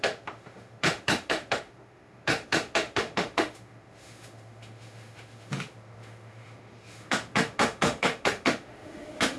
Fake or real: fake